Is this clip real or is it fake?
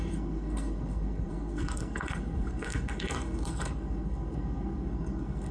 fake